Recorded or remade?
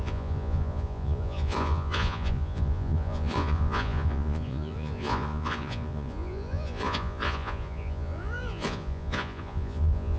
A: remade